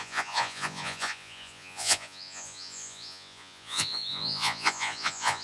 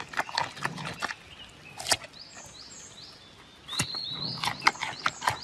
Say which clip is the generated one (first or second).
first